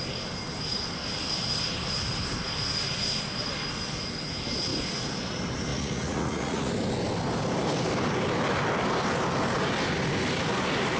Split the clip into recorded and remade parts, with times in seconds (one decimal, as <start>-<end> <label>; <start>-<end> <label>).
0.0-5.7 recorded; 5.7-6.7 remade; 6.7-11.0 recorded